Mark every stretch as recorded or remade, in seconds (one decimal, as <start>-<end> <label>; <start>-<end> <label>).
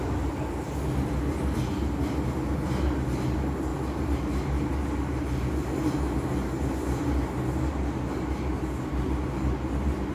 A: 0.0-10.1 recorded